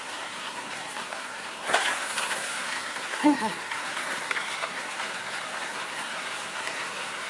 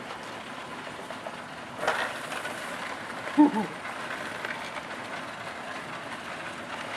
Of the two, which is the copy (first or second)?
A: first